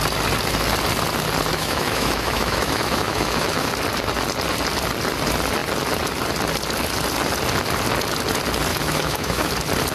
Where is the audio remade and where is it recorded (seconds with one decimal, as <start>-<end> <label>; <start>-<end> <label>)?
0.0-1.5 recorded; 1.5-3.7 remade; 3.7-8.7 recorded; 8.7-9.5 remade; 9.5-9.9 recorded